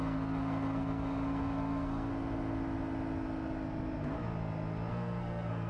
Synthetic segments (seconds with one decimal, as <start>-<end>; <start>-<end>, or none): 0.0-2.1; 4.9-5.7